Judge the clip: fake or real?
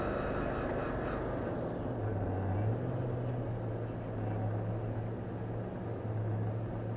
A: real